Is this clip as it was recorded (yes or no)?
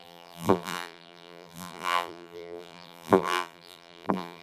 no